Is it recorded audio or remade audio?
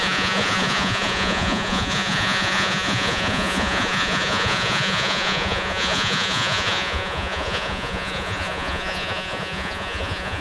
remade